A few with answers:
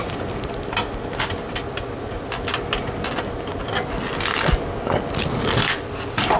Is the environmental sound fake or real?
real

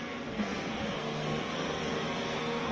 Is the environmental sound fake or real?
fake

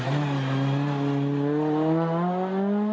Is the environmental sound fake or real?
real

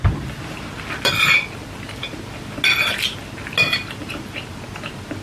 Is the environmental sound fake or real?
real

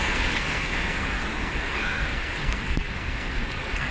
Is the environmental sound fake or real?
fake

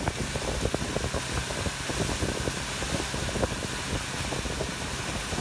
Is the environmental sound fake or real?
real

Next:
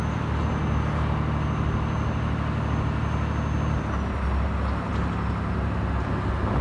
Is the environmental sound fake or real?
real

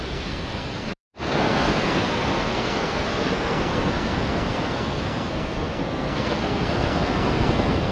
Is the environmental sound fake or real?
fake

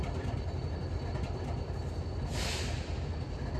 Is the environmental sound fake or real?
real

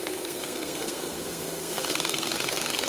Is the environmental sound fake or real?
fake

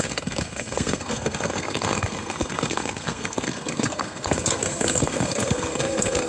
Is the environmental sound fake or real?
fake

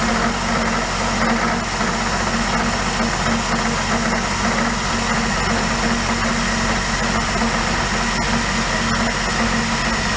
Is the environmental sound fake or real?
real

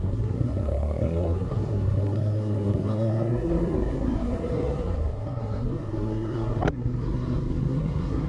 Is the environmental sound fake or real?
fake